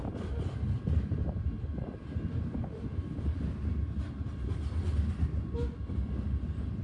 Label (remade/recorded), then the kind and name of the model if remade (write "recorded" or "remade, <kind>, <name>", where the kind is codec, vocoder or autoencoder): recorded